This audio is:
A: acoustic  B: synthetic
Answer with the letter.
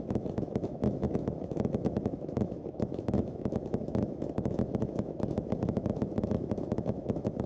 B